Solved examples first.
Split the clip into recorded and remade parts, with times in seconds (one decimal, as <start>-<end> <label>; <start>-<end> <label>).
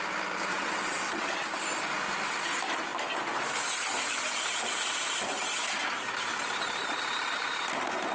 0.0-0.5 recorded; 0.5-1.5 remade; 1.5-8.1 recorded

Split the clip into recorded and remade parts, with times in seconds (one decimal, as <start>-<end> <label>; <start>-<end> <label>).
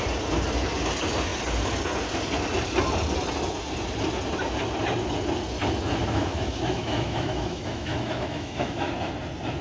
0.0-6.0 recorded; 6.0-8.9 remade; 8.9-9.6 recorded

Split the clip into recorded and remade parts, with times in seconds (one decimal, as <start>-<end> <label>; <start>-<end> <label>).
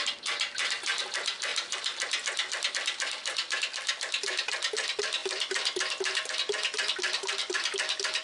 0.0-8.2 recorded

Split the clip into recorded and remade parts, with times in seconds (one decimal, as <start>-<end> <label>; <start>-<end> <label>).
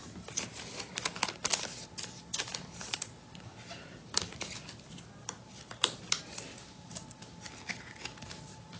0.0-8.8 recorded